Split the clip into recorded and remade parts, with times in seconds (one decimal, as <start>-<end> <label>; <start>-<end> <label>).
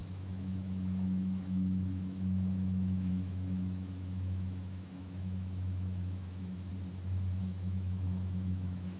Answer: 0.0-6.7 remade; 6.7-7.4 recorded; 7.4-9.0 remade